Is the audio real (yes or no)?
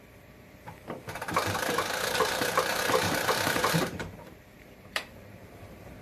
no